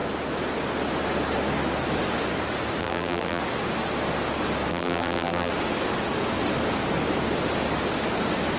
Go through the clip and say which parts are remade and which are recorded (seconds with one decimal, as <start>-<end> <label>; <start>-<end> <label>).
0.0-2.8 recorded; 2.8-3.4 remade; 3.4-4.7 recorded; 4.7-5.5 remade; 5.5-8.6 recorded

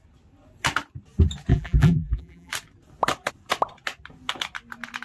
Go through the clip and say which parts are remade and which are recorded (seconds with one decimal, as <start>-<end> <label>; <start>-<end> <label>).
0.0-1.5 recorded; 1.5-2.5 remade; 2.5-5.0 recorded

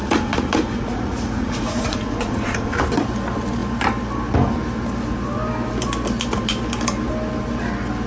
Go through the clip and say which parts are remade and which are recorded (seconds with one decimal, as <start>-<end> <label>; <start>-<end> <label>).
0.0-2.8 remade; 2.8-8.1 recorded